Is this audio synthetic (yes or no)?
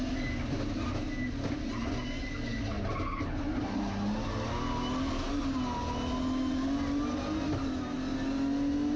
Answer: no